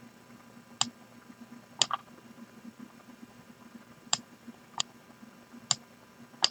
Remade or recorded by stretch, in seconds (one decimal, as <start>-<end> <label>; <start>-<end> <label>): 0.0-2.0 recorded; 2.0-4.8 remade; 4.8-6.5 recorded